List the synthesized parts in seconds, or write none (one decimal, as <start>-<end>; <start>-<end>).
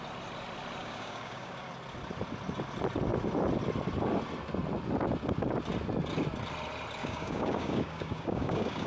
0.8-1.7; 7.0-8.9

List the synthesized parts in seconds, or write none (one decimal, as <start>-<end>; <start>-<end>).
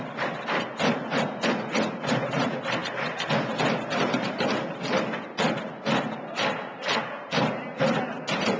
none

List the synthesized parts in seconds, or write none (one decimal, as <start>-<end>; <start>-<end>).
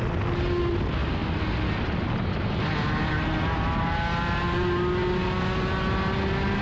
none